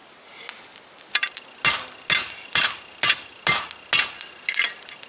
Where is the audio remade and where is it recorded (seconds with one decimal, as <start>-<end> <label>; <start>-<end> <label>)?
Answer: 0.0-5.1 recorded